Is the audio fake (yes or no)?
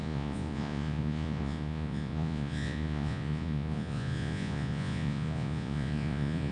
yes